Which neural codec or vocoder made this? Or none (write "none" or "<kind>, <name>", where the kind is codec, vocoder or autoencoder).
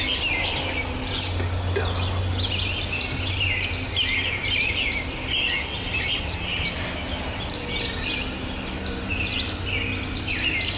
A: none